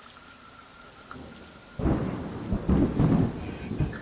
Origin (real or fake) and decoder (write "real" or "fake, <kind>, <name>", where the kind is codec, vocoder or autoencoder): real